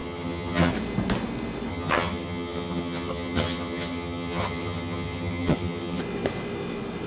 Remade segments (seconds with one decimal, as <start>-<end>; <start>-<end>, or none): 0.0-0.7; 1.7-6.0